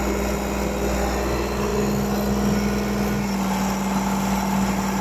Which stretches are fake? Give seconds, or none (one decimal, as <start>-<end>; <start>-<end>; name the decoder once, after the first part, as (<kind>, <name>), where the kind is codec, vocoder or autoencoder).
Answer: none